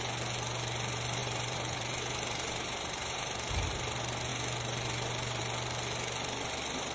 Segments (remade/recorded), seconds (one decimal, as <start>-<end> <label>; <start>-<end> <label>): 0.0-1.2 recorded; 1.2-3.5 remade; 3.5-6.9 recorded